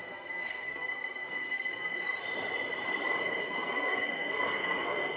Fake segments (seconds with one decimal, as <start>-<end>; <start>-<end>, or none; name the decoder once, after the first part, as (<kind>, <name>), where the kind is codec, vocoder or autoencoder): 0.0-1.9 (codec, SNAC); 3.4-5.2

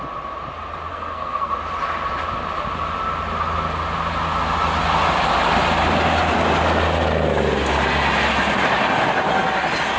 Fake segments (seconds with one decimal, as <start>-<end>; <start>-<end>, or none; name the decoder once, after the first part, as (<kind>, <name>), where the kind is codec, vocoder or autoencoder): 0.9-1.5 (codec, SNAC)

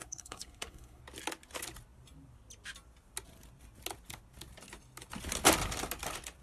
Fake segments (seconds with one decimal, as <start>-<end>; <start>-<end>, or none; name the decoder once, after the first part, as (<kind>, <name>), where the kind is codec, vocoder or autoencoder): 0.0-1.0 (codec, SNAC)

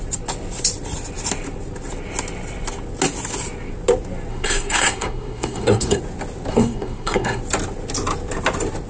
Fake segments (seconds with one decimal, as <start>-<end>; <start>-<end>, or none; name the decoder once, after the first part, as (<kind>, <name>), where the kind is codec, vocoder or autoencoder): 4.3-6.0 (codec, SNAC); 6.5-7.4

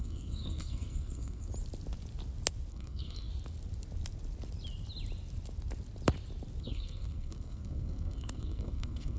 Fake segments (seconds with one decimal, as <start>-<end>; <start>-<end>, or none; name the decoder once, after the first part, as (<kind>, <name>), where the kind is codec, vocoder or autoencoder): 0.0-1.5 (codec, SNAC); 2.7-3.3; 6.6-9.2

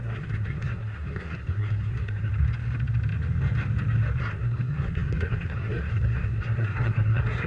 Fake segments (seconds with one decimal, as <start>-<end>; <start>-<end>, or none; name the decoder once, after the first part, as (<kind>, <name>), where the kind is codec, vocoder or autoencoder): 0.0-2.3 (codec, SNAC); 4.2-7.5

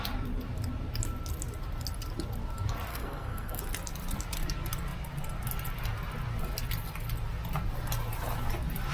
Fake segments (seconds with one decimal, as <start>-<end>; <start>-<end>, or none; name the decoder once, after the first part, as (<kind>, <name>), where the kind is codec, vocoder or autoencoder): 2.9-3.6 (codec, SNAC)

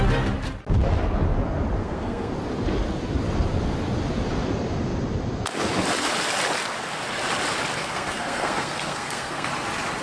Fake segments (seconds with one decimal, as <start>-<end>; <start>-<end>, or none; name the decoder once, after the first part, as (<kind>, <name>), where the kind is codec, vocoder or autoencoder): 1.8-2.3 (codec, SNAC); 7.8-9.5